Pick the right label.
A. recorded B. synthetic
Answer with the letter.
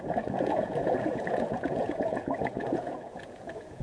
B